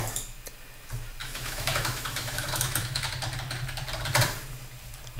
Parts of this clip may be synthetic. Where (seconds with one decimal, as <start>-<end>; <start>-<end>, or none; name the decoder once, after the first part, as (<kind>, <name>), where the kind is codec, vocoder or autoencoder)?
1.2-3.1 (autoencoder, DAC-VAE)